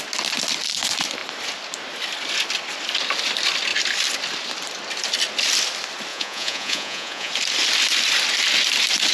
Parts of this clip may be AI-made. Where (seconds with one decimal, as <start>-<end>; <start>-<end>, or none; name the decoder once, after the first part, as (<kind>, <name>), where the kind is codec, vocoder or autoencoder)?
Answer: 6.1-7.3 (vocoder, Vocos)